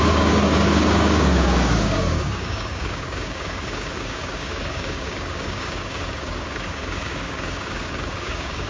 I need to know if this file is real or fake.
fake